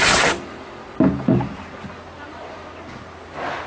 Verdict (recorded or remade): recorded